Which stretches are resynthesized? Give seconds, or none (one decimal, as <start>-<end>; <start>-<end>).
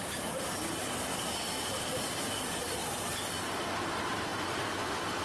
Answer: 0.0-1.1; 1.6-2.8; 3.4-5.2